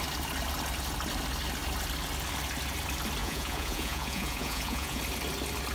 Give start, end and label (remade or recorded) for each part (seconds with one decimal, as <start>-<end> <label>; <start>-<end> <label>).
0.0-3.2 recorded; 3.2-5.0 remade; 5.0-5.7 recorded